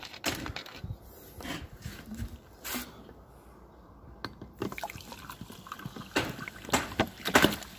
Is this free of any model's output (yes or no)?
yes